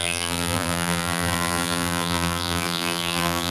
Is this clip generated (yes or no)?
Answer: yes